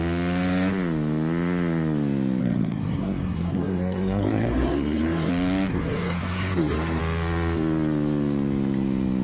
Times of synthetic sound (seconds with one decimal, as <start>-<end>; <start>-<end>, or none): 2.4-5.3; 5.7-7.0

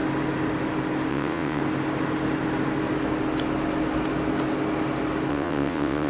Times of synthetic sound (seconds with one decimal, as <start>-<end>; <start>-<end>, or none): 1.1-1.6; 5.3-6.1